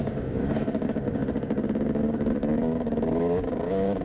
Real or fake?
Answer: fake